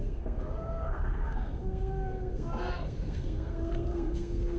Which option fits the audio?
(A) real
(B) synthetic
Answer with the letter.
B